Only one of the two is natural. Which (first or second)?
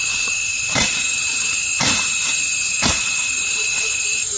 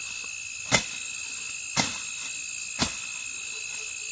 second